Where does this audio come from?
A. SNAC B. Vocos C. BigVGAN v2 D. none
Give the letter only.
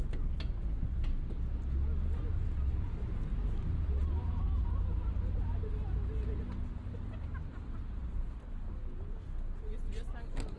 D